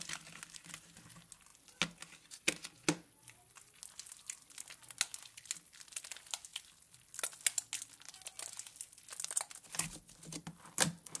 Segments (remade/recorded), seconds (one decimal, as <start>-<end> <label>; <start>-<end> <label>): 0.0-11.2 recorded